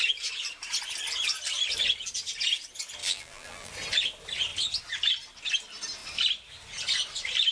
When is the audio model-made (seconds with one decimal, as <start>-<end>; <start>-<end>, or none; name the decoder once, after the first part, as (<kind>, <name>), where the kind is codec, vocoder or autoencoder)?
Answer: 3.0-3.7 (vocoder, BigVGAN v2)